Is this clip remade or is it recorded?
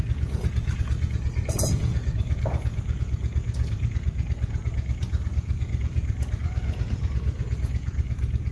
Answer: remade